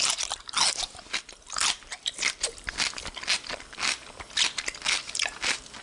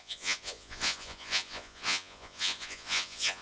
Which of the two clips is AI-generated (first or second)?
second